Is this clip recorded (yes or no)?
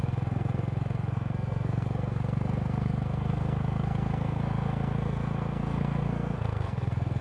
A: no